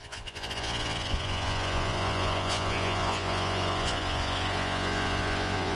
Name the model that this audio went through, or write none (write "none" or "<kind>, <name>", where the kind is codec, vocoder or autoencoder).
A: vocoder, Vocos